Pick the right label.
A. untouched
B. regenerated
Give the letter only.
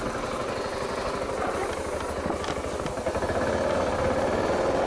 A